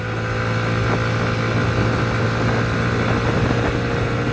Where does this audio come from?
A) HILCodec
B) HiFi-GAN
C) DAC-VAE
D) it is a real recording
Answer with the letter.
D